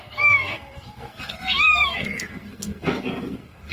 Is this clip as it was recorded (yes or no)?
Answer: no